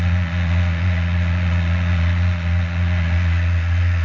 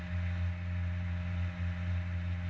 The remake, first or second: first